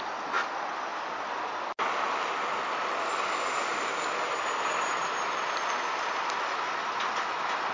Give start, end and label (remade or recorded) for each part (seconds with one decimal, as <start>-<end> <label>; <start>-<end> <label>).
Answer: 0.0-7.7 recorded